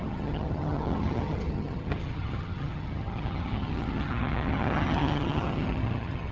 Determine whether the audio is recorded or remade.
remade